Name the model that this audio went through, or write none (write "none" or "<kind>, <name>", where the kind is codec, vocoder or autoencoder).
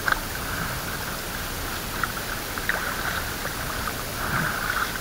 none